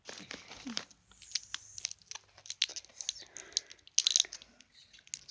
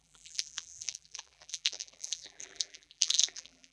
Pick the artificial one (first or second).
second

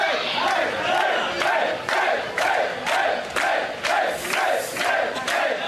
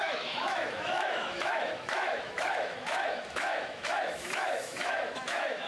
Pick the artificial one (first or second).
second